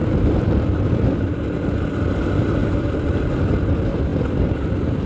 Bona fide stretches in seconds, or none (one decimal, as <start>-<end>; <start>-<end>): 1.9-2.6; 3.5-4.1; 4.6-5.1